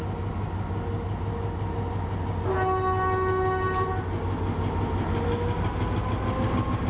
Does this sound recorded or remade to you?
recorded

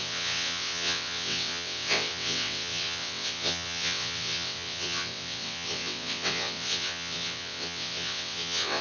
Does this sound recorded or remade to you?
remade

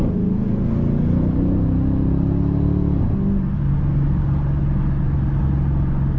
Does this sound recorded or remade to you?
recorded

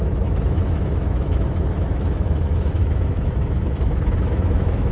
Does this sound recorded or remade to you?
remade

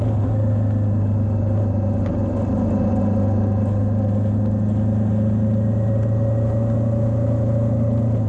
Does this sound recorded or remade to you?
recorded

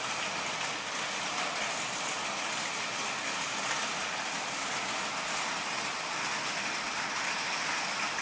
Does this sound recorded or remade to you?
recorded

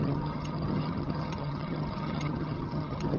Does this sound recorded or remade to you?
remade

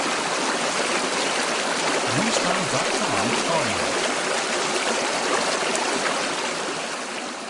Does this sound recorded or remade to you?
recorded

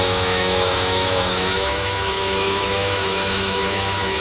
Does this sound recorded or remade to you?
remade